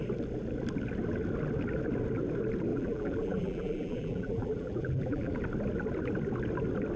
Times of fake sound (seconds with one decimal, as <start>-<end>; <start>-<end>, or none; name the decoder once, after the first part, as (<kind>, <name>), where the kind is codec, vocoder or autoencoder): 2.7-5.3 (vocoder, BigVGAN v2)